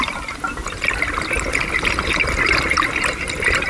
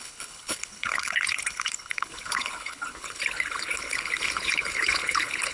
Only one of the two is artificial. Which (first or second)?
second